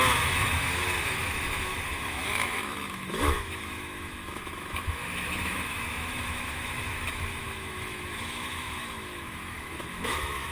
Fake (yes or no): yes